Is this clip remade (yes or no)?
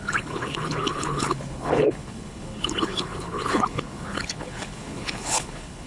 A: yes